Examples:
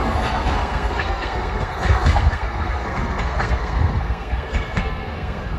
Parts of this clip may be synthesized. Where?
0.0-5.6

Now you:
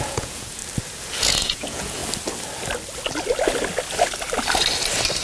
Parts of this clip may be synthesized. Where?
0.0-0.6; 1.2-2.0

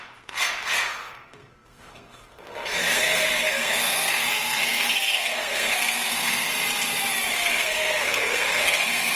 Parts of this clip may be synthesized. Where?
0.0-6.5; 7.3-9.2